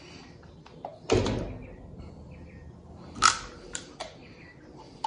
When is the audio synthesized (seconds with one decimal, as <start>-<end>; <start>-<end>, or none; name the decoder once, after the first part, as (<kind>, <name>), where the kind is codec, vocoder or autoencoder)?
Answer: none